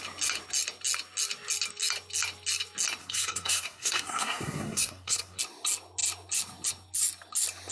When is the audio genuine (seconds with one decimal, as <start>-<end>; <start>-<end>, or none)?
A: 0.0-3.0; 5.4-7.7